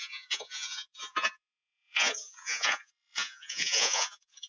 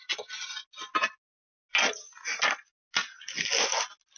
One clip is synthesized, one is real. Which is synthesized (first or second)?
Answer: first